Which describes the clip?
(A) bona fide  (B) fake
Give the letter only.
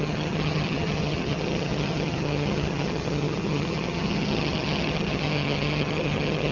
B